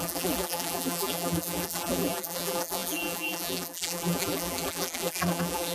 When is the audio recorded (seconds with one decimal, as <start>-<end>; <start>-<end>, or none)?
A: none

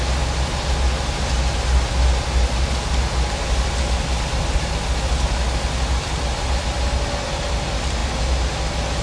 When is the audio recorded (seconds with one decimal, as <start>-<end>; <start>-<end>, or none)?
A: 0.0-9.0

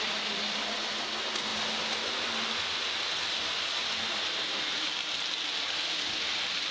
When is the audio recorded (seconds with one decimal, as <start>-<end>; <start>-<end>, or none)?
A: 0.0-6.7

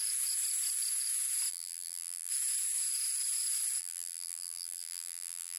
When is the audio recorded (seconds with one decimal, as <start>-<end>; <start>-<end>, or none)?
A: 0.0-1.5; 2.3-3.8